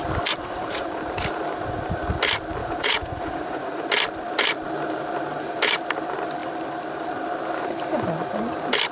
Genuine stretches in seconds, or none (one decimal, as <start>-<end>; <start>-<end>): 0.0-0.4; 1.0-2.6; 3.9-8.9